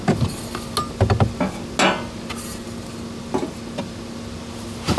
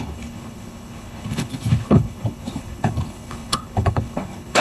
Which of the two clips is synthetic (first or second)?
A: second